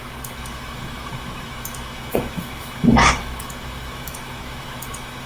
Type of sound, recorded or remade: remade